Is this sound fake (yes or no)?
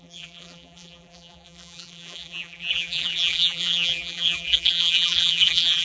yes